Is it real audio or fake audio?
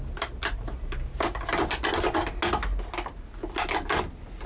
real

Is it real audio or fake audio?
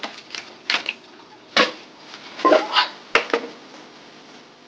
real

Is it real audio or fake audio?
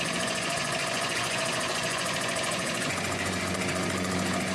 fake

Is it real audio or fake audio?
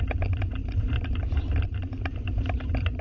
fake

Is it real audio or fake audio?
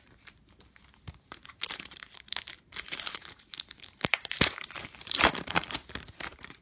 fake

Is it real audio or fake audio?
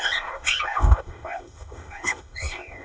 fake